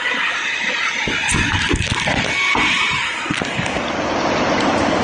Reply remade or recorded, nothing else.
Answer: recorded